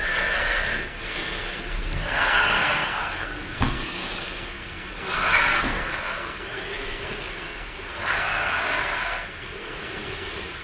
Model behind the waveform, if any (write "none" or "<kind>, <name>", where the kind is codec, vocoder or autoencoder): codec, SNAC